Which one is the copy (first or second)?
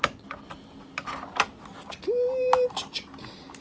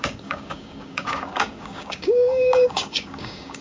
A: second